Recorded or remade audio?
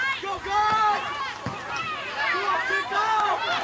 recorded